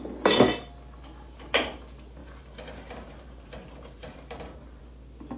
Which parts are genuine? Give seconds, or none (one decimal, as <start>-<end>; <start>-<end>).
0.0-2.2; 4.8-5.4